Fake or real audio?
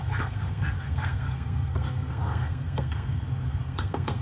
fake